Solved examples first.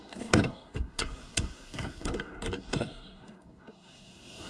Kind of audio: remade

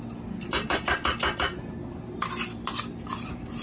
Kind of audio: recorded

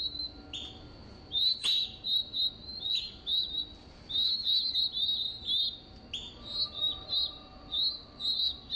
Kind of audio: recorded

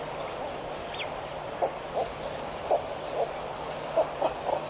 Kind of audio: recorded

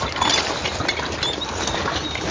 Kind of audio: recorded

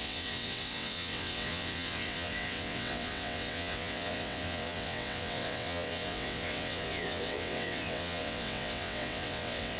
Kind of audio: remade